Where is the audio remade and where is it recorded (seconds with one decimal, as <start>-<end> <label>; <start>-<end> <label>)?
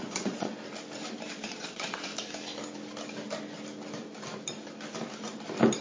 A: 0.0-0.5 remade; 0.5-1.3 recorded; 1.3-2.1 remade; 2.1-5.8 recorded